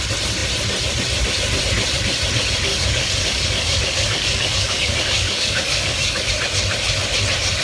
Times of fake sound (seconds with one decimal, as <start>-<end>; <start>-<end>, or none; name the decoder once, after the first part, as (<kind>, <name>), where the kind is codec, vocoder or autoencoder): 2.7-6.3 (codec, DAC)